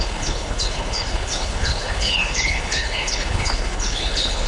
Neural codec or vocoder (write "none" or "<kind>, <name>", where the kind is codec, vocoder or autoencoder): codec, HILCodec